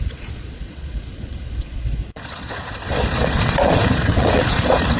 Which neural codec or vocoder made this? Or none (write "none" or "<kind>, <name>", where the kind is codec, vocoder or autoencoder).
vocoder, Vocos